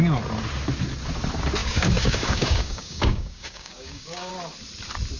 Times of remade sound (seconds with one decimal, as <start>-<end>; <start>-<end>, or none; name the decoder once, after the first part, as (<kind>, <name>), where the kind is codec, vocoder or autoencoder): 1.6-4.3 (codec, DAC)